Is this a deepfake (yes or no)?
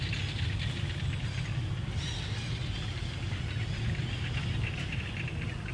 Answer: no